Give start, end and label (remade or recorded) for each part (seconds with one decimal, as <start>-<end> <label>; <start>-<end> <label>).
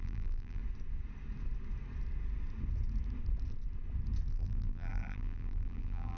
0.0-0.6 remade; 0.6-4.3 recorded; 4.3-6.2 remade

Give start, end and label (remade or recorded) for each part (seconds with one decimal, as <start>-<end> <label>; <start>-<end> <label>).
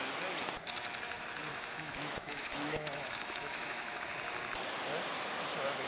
0.0-1.5 recorded; 1.5-4.0 remade; 4.0-5.9 recorded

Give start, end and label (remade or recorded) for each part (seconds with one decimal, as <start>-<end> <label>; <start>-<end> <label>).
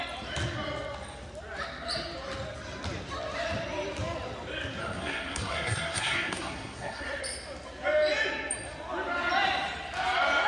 0.0-4.8 recorded; 4.8-7.2 remade; 7.2-10.5 recorded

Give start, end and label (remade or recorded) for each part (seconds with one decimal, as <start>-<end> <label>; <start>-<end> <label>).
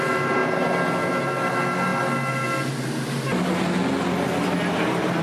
0.0-5.2 recorded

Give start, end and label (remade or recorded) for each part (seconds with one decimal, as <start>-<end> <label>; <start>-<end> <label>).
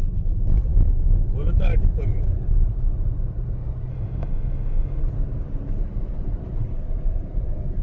0.0-3.9 recorded; 3.9-5.0 remade; 5.0-7.8 recorded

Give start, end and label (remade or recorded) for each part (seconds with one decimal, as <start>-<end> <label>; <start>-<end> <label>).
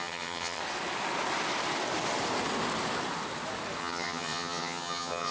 0.0-0.6 remade; 0.6-3.8 recorded; 3.8-5.3 remade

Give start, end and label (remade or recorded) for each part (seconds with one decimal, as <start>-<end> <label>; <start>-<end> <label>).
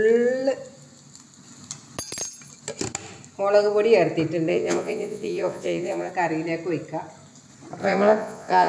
0.0-4.5 recorded; 4.5-6.1 remade; 6.1-7.8 recorded; 7.8-8.7 remade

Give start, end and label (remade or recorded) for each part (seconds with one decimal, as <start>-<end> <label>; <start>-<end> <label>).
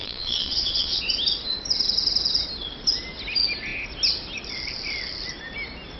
0.0-1.0 remade; 1.0-6.0 recorded